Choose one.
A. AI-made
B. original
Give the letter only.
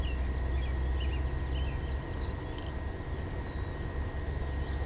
B